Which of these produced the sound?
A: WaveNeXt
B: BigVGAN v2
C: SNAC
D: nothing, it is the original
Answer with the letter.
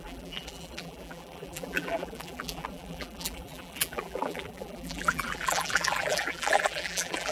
B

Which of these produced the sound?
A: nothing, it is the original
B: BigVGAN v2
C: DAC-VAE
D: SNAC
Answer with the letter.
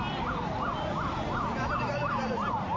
B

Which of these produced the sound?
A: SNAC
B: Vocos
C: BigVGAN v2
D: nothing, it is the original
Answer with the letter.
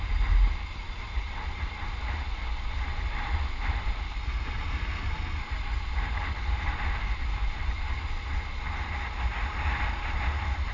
D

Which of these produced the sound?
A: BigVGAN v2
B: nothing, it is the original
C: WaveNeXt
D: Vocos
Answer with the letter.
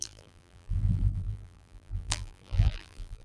A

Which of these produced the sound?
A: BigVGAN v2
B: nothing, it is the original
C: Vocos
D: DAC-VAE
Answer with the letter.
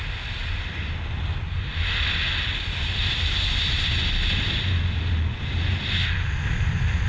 B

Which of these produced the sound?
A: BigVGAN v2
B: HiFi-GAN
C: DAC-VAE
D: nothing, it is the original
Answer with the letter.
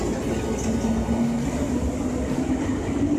D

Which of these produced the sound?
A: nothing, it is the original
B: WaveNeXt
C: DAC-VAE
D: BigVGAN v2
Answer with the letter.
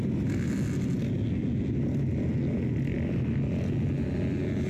A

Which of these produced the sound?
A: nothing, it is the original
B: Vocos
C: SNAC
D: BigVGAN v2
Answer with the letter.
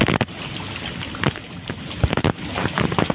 A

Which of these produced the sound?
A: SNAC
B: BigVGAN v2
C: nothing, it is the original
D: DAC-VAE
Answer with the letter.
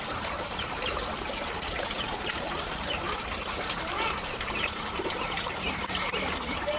B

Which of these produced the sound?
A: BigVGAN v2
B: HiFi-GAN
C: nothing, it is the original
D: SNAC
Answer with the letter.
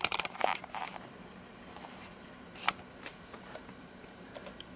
A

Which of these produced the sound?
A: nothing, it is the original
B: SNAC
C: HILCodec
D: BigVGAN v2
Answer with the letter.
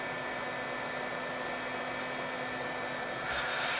A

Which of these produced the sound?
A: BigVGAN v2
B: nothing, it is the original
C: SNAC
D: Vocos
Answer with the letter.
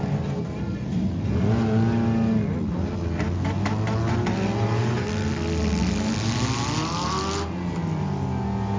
B